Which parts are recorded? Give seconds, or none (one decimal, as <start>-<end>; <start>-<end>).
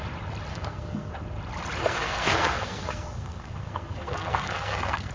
0.0-0.5; 1.1-1.8